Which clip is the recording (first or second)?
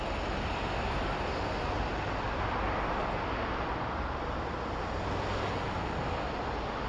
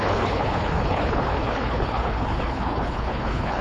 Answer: first